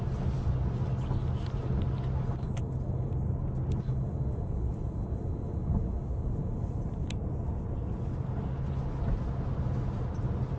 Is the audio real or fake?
real